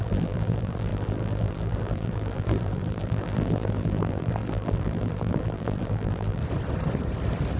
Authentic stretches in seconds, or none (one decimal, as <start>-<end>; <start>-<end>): 6.4-7.6